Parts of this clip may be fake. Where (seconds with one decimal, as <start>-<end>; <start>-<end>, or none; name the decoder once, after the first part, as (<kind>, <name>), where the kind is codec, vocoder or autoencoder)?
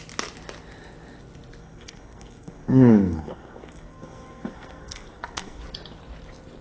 1.6-5.6 (codec, SNAC)